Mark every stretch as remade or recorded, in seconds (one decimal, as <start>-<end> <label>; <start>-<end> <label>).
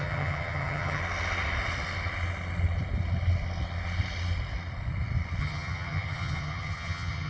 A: 0.0-1.0 remade; 1.0-5.4 recorded; 5.4-7.3 remade